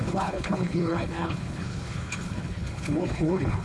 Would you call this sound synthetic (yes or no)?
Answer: yes